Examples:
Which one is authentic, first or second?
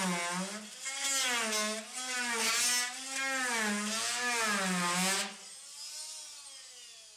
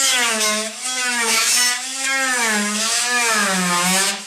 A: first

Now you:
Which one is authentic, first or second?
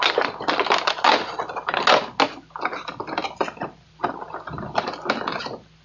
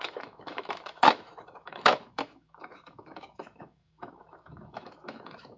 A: first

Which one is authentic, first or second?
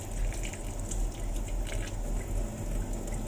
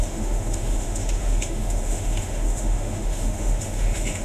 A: first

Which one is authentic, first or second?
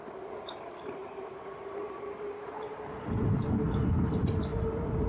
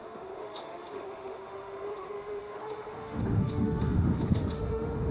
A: first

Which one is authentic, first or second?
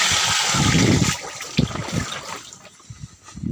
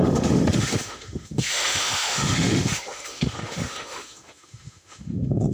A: first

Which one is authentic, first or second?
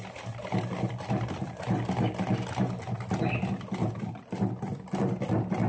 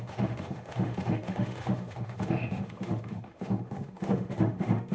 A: first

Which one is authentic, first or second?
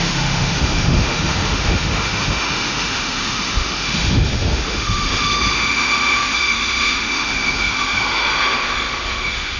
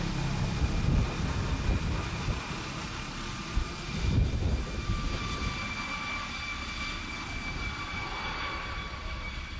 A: second